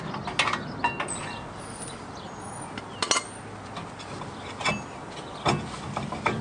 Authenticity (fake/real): real